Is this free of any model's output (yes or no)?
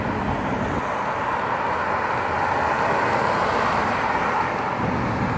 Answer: yes